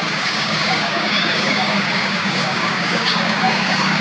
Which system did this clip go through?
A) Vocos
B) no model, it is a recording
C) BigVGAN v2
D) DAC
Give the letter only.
D